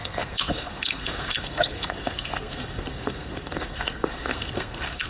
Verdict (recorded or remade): remade